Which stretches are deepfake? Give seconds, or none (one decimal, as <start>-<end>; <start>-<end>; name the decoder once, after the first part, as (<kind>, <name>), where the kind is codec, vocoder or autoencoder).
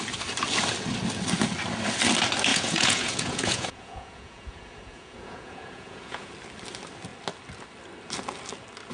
2.5-6.3 (vocoder, Vocos)